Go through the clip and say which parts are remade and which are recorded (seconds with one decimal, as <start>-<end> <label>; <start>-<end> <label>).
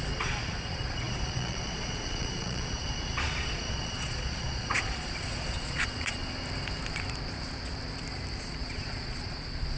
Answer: 0.0-6.2 remade; 6.2-8.4 recorded; 8.4-9.8 remade